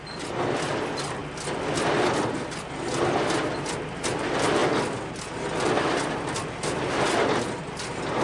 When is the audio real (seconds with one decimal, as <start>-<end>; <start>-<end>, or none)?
0.0-8.2

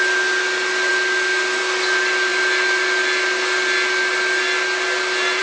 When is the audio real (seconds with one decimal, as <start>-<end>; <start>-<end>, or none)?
0.0-5.4

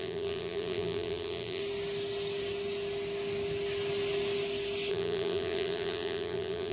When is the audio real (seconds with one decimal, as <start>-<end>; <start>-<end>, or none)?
1.6-4.9

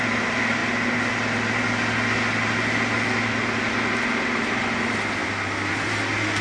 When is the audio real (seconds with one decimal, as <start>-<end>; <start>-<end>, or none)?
0.0-6.4

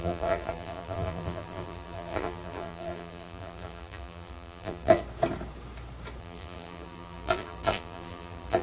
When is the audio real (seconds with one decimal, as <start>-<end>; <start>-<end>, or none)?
5.0-6.2

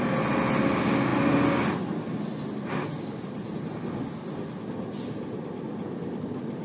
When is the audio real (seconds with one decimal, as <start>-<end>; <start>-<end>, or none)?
0.0-6.6

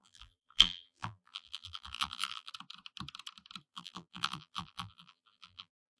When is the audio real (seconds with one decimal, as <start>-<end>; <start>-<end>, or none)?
2.5-3.7